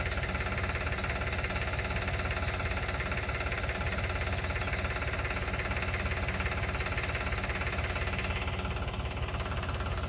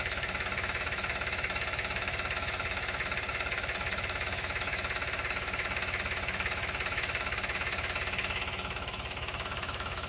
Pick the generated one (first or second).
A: second